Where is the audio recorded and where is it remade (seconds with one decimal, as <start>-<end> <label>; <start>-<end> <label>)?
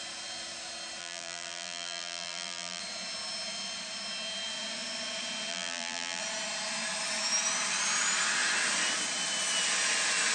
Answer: 0.0-1.0 recorded; 1.0-2.8 remade; 2.8-5.5 recorded; 5.5-6.2 remade; 6.2-10.3 recorded